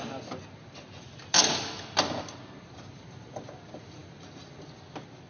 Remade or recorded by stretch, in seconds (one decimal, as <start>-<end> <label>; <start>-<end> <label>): 0.0-5.3 recorded